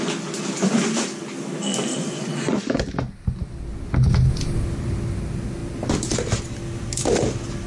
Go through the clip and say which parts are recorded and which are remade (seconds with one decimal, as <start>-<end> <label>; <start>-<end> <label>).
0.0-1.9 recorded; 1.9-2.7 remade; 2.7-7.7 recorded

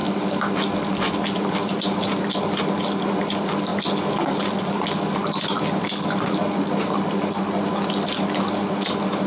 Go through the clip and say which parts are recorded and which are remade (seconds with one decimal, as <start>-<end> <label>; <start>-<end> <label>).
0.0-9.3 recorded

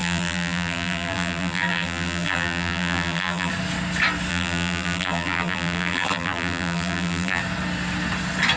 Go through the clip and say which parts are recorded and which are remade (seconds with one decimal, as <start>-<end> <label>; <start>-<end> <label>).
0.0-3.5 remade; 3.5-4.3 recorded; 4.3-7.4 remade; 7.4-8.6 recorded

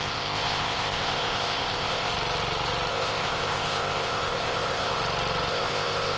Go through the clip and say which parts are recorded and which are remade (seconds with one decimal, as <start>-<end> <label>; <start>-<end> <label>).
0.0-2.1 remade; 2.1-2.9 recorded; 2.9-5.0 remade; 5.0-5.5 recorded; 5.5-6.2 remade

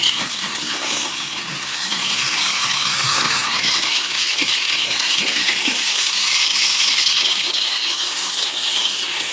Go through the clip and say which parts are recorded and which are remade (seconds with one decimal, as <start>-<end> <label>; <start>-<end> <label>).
0.0-9.3 remade

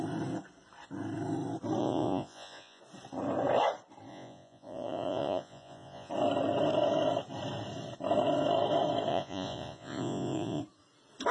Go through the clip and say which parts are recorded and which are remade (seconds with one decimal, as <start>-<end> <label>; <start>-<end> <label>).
0.0-1.8 recorded; 1.8-2.8 remade; 2.8-4.1 recorded; 4.1-6.1 remade; 6.1-9.1 recorded; 9.1-10.6 remade; 10.6-11.3 recorded

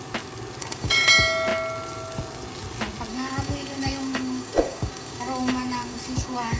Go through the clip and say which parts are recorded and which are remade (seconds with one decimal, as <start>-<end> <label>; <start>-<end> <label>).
0.0-0.6 recorded; 0.6-1.1 remade; 1.1-3.1 recorded; 3.1-6.6 remade